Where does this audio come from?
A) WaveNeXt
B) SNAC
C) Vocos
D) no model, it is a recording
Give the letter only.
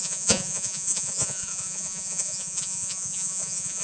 C